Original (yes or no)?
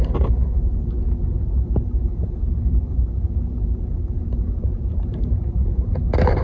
no